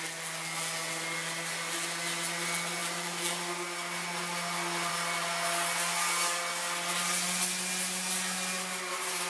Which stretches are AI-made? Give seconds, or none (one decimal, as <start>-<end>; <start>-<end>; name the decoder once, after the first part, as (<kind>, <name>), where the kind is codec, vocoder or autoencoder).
none